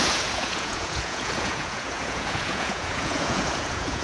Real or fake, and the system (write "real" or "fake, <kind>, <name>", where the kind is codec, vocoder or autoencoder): fake, vocoder, Vocos